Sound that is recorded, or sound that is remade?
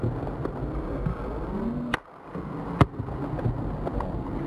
recorded